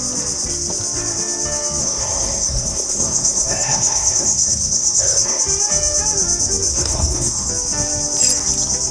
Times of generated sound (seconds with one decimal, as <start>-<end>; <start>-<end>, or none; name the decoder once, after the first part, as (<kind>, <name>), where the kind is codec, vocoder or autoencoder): 1.8-5.4 (codec, SNAC); 6.7-7.5